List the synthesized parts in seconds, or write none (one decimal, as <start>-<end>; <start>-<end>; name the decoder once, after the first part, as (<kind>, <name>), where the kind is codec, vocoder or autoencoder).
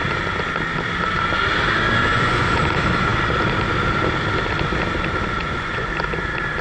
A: 2.1-2.6 (vocoder, Vocos); 5.4-5.9